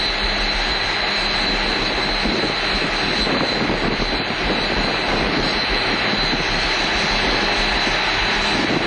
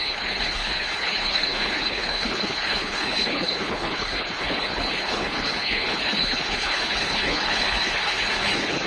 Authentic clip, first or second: first